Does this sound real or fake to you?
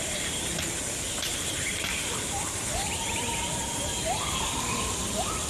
fake